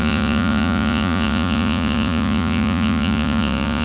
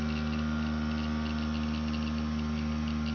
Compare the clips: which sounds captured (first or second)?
second